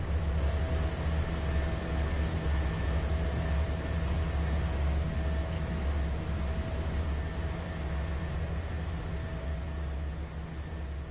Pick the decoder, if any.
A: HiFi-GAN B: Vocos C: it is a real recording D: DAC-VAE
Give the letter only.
C